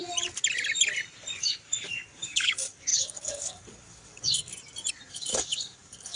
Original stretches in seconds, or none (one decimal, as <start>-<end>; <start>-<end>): 0.0-1.4; 4.5-5.1